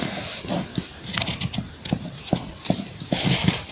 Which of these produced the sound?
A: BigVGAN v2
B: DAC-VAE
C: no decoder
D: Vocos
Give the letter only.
C